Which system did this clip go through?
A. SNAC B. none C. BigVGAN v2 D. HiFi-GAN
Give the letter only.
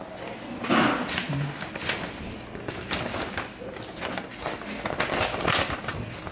B